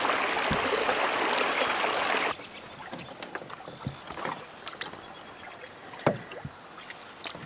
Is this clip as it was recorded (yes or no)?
yes